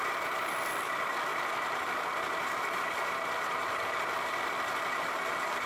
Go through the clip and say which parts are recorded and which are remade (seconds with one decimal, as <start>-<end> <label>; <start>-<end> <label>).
0.0-5.7 recorded